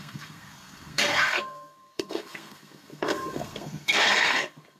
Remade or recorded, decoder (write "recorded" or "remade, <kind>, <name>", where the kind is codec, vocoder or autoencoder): remade, codec, SNAC